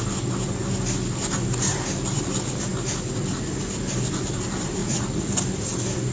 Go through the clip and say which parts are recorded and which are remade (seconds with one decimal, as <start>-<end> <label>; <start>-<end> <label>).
0.0-4.8 recorded; 4.8-5.3 remade; 5.3-6.1 recorded